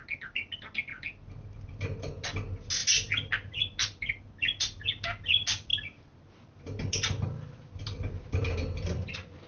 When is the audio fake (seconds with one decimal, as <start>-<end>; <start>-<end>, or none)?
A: none